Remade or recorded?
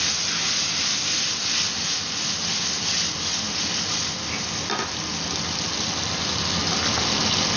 recorded